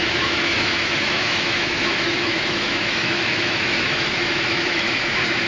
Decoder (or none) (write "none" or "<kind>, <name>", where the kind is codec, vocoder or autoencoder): autoencoder, DAC-VAE